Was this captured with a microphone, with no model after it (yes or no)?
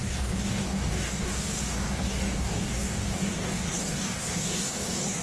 no